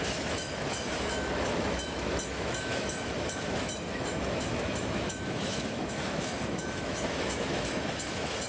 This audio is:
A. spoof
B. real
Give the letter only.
A